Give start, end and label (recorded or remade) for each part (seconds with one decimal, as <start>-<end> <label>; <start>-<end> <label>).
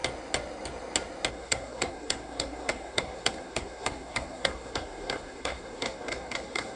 0.0-1.3 recorded; 1.3-6.8 remade